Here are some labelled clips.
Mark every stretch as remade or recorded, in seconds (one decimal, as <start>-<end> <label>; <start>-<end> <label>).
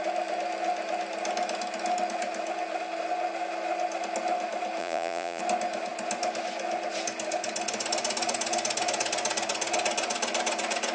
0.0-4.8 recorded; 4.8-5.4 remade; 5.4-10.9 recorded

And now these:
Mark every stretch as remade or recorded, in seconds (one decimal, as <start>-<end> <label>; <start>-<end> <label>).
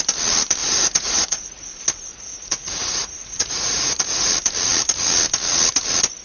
0.0-0.6 recorded; 0.6-1.7 remade; 1.7-2.1 recorded; 2.1-4.3 remade; 4.3-6.2 recorded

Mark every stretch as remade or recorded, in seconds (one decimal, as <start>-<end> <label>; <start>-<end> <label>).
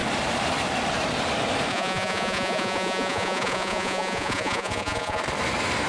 0.0-1.7 recorded; 1.7-5.2 remade; 5.2-5.9 recorded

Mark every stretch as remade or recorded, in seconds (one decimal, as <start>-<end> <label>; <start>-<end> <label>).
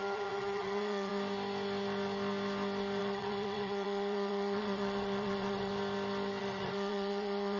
0.0-1.1 remade; 1.1-3.0 recorded; 3.0-5.7 remade; 5.7-6.4 recorded; 6.4-7.6 remade